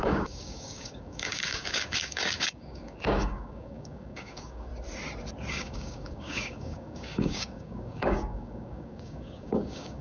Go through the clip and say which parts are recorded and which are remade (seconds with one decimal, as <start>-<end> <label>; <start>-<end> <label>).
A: 0.0-4.7 remade; 4.7-5.5 recorded; 5.5-10.0 remade